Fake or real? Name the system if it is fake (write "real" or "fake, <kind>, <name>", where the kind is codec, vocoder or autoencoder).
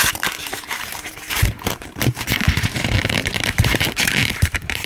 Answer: fake, vocoder, BigVGAN v2